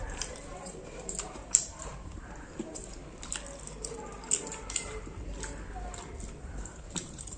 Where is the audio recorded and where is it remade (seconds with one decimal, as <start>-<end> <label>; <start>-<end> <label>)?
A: 0.0-3.0 remade; 3.0-6.4 recorded; 6.4-7.4 remade